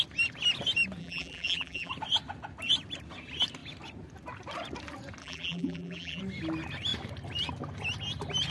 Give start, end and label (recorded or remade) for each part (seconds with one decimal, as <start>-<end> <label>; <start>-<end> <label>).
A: 0.0-1.0 recorded; 1.0-1.9 remade; 1.9-5.2 recorded; 5.2-6.2 remade; 6.2-8.5 recorded